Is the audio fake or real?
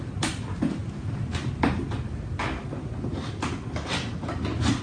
real